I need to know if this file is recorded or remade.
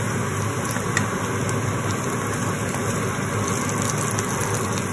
recorded